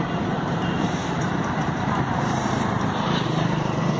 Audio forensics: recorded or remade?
remade